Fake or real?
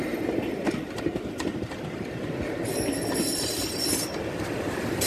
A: real